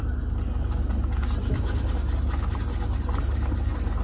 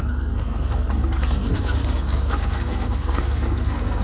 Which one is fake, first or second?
second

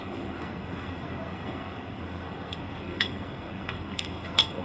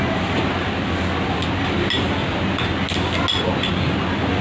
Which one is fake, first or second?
first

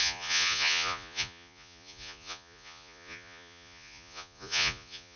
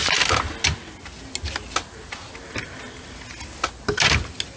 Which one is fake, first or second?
first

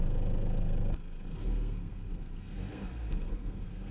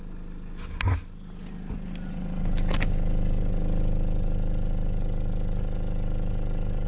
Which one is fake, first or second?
first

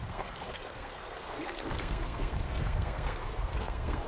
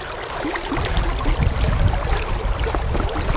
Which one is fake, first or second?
first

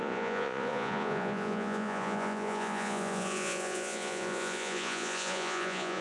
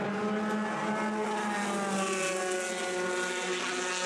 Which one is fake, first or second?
first